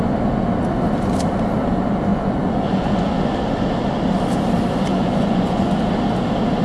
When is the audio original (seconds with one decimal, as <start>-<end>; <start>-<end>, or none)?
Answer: 0.0-2.1; 3.2-4.9; 5.7-6.6